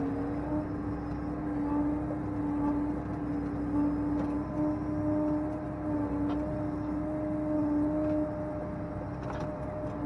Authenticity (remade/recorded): recorded